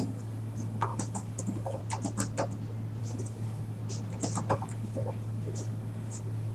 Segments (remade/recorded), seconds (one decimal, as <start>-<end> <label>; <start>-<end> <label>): 0.0-1.8 remade; 1.8-3.0 recorded; 3.0-3.8 remade; 3.8-4.5 recorded; 4.5-6.5 remade